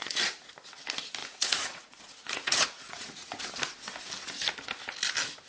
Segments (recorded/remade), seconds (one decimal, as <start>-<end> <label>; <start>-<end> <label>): 0.0-0.5 remade; 0.5-1.2 recorded; 1.2-3.4 remade; 3.4-5.5 recorded